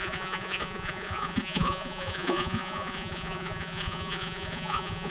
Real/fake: fake